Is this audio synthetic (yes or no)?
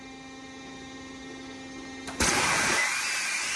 no